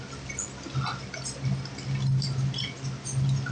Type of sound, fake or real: real